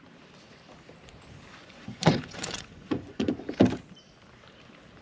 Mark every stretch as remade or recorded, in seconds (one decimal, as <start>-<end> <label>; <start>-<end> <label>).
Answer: 0.0-1.6 recorded; 1.6-3.3 remade; 3.3-5.0 recorded